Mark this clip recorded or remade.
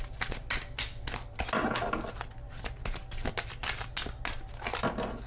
recorded